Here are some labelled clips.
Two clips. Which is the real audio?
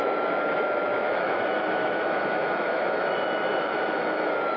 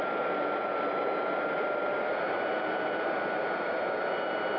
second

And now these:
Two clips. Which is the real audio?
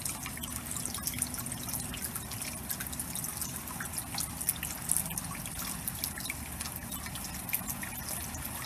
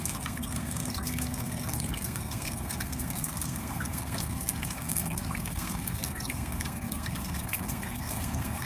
first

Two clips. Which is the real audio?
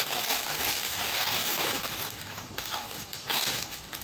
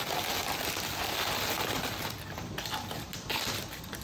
second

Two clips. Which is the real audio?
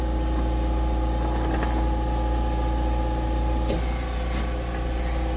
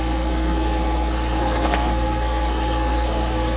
first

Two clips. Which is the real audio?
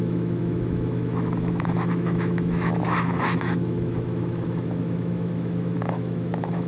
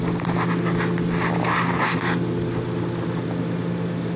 second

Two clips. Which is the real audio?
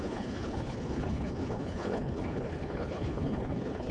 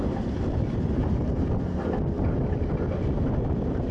second